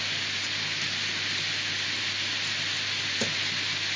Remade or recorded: recorded